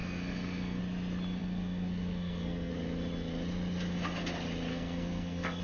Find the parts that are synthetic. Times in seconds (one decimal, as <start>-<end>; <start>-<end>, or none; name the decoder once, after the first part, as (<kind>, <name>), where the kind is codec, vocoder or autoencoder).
0.0-0.8 (codec, SNAC); 1.4-2.7; 4.7-5.6